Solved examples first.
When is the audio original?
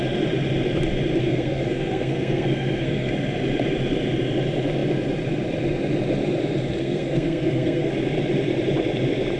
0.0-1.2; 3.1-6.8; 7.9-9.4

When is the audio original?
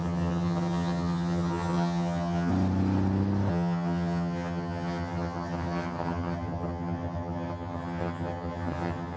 2.5-3.5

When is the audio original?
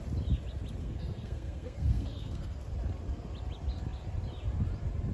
0.0-0.8; 2.6-5.1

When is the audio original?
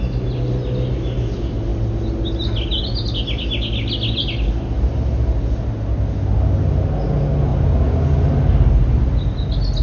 0.0-9.8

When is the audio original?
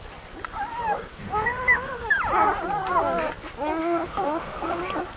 0.0-1.1; 2.1-3.8; 4.8-5.2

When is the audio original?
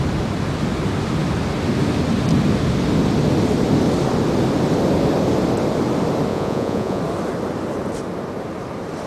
0.0-6.3; 7.0-9.1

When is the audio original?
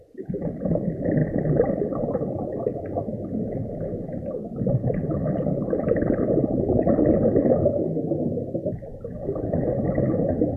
0.0-10.6